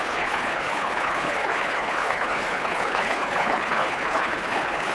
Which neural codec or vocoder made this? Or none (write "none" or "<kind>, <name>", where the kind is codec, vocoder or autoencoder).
codec, HILCodec